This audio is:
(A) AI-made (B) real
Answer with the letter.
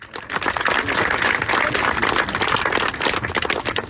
B